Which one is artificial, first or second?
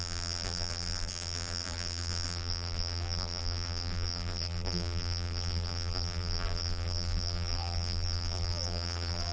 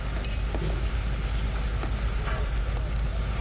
first